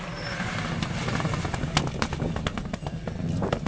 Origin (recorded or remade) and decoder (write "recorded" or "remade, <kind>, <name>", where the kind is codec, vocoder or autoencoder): recorded